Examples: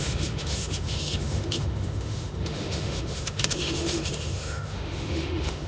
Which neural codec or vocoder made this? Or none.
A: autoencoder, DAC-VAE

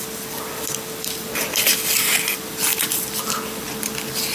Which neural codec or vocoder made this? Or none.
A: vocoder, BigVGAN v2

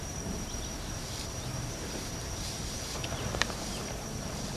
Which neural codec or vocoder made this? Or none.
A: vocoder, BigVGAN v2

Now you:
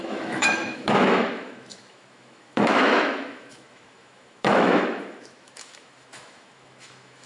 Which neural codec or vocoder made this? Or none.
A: autoencoder, DAC-VAE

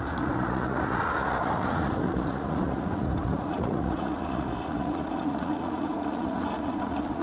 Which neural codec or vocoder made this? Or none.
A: vocoder, Vocos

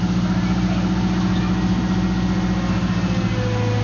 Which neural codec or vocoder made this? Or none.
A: none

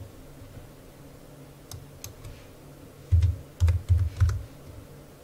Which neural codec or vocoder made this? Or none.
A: none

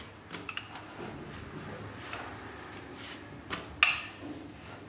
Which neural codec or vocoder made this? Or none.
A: none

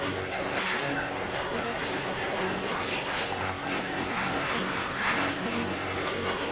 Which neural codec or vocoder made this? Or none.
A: codec, SNAC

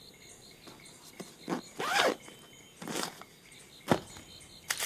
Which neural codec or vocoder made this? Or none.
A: none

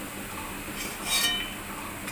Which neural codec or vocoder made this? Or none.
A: none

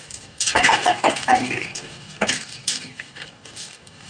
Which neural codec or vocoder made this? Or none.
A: codec, DAC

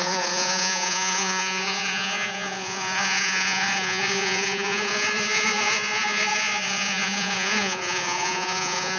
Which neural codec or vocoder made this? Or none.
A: vocoder, Vocos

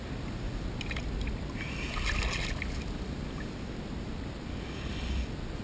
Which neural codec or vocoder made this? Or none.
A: none